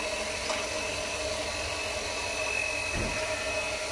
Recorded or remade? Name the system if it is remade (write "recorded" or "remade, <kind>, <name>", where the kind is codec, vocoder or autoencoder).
recorded